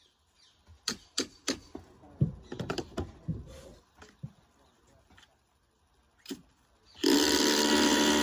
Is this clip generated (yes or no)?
no